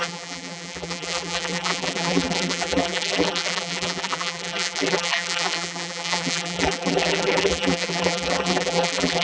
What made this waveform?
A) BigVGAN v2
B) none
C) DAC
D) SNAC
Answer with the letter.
A